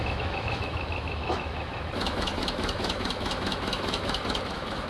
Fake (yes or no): yes